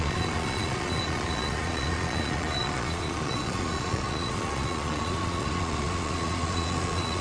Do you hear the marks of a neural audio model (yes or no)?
yes